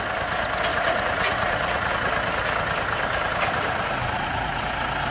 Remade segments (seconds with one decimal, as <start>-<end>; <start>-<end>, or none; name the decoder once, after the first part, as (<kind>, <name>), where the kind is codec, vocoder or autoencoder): 0.7-1.9 (vocoder, Vocos); 3.9-4.6